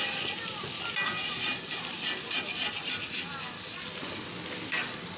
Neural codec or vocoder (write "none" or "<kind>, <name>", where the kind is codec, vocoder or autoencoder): none